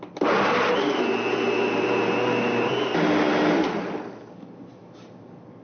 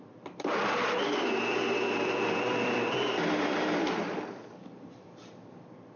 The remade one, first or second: second